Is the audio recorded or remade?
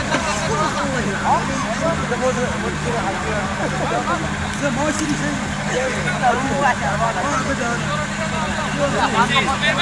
recorded